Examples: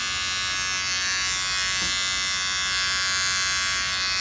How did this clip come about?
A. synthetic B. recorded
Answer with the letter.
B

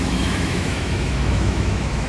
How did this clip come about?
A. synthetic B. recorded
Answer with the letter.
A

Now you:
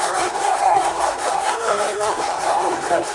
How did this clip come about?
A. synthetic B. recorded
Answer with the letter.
A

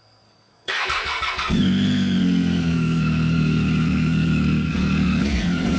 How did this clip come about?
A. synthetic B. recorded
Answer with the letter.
A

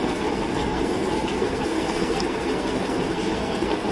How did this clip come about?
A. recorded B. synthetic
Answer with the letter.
B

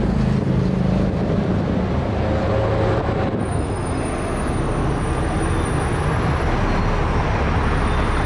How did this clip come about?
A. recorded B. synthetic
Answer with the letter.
A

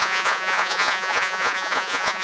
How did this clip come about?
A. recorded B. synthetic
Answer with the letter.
B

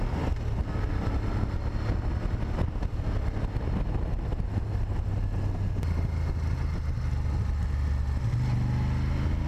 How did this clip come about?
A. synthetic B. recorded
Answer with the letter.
B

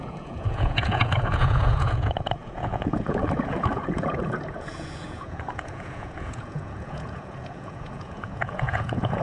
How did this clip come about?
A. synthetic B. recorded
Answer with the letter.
A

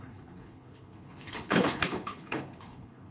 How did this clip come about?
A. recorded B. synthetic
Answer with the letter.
B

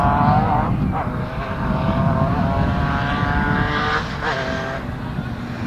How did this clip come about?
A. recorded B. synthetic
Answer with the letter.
A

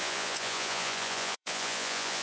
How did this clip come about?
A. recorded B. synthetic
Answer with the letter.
B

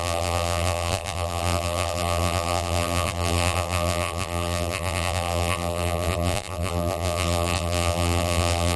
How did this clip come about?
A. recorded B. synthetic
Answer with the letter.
B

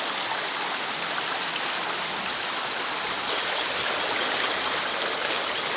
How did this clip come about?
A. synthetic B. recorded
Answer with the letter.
B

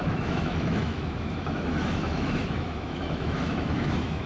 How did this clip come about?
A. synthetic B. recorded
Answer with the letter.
A